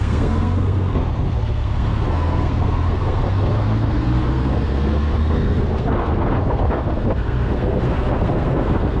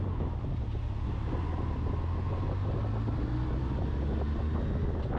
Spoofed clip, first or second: first